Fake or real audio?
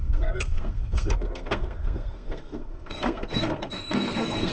fake